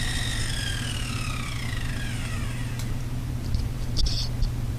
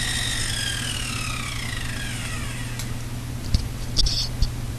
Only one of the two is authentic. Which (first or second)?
second